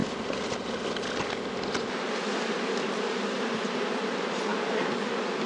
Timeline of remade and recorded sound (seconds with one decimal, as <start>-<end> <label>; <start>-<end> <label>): 0.0-5.5 recorded